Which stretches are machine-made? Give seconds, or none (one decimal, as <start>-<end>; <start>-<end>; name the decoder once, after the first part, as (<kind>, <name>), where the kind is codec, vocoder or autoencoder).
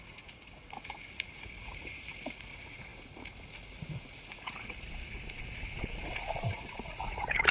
0.0-7.5 (vocoder, Vocos)